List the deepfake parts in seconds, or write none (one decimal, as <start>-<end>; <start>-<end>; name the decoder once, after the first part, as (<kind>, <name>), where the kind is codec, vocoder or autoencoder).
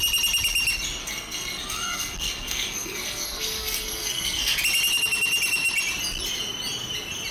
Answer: 1.0-4.6 (codec, SNAC)